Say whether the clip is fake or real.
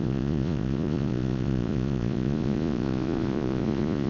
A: fake